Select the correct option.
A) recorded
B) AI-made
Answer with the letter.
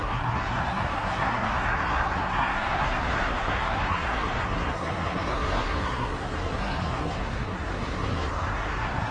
B